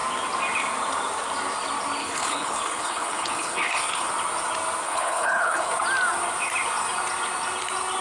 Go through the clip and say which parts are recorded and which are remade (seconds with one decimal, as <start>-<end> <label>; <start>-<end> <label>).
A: 0.0-2.0 recorded; 2.0-4.1 remade; 4.1-4.8 recorded; 4.8-5.7 remade; 5.7-8.0 recorded